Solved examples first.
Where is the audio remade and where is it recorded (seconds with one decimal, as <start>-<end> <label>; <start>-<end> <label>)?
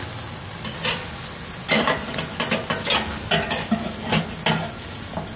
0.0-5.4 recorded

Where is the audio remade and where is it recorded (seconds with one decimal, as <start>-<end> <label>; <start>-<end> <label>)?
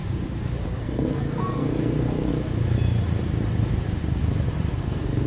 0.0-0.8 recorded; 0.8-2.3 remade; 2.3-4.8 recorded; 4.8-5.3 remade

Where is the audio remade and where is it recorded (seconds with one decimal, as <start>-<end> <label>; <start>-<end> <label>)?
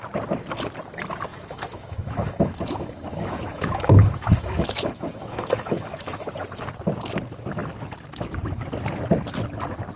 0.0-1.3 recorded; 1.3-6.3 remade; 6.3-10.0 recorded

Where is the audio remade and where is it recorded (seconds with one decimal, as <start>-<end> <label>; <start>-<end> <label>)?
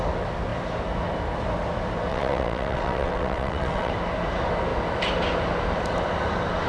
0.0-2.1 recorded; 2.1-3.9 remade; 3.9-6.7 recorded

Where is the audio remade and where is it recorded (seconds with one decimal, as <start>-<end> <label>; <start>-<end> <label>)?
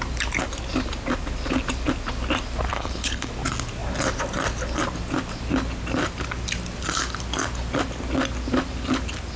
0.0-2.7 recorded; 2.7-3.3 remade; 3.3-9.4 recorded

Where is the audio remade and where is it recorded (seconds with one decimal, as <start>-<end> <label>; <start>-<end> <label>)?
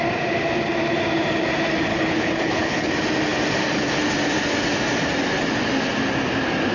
0.0-1.9 recorded; 1.9-2.9 remade; 2.9-6.7 recorded